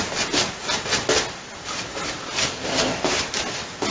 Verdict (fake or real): real